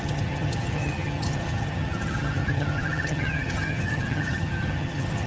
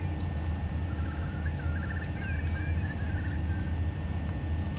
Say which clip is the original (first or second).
second